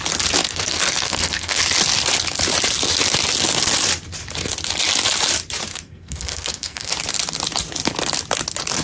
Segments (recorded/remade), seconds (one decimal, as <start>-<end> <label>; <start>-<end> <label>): 0.0-0.4 recorded; 0.4-1.6 remade; 1.6-5.7 recorded; 5.7-6.9 remade; 6.9-8.8 recorded